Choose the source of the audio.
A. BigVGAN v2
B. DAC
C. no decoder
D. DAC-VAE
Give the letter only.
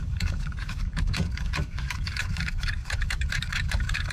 B